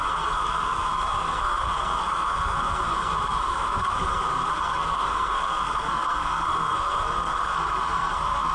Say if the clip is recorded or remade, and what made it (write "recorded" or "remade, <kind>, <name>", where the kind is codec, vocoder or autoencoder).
remade, codec, SNAC